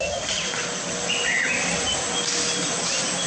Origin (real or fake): real